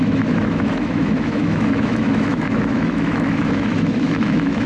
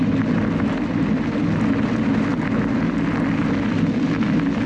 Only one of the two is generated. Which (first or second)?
first